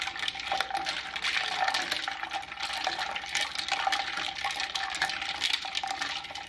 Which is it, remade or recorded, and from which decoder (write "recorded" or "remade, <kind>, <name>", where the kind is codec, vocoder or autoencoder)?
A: recorded